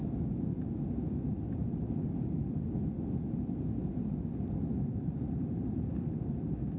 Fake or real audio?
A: real